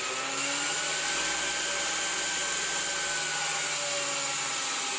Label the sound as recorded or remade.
recorded